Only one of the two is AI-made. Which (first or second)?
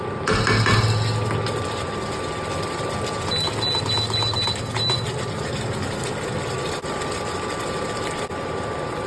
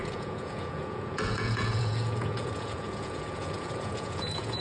second